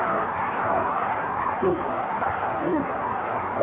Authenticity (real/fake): fake